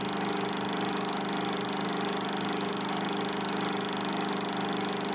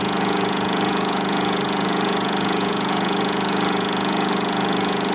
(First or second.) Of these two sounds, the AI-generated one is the second